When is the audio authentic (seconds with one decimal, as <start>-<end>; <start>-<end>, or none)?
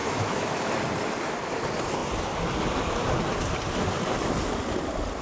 0.7-5.2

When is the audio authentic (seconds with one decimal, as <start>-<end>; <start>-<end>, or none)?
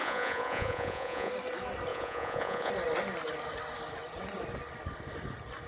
1.3-1.9; 2.7-5.7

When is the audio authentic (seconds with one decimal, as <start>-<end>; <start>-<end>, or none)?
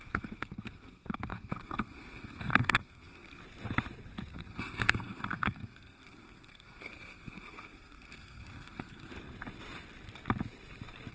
3.4-4.3; 9.1-11.1